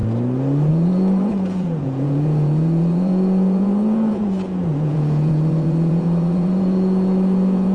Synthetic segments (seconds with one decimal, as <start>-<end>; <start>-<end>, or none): 0.7-7.7